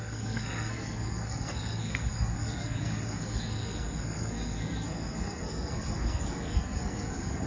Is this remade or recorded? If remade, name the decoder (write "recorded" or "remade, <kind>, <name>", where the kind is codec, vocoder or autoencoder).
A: remade, codec, SNAC